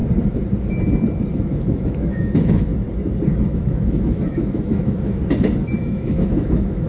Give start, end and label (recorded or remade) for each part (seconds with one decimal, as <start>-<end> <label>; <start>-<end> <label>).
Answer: 0.0-1.3 recorded; 1.3-2.7 remade; 2.7-3.4 recorded; 3.4-5.2 remade; 5.2-5.8 recorded; 5.8-6.9 remade